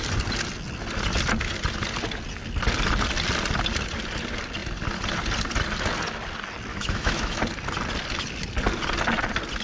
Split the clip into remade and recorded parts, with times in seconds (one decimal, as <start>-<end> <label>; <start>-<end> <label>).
0.0-6.7 recorded; 6.7-7.4 remade; 7.4-9.6 recorded